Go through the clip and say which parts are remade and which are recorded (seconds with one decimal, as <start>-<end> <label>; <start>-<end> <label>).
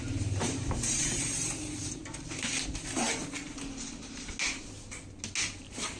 0.0-2.0 remade; 2.0-5.6 recorded; 5.6-6.0 remade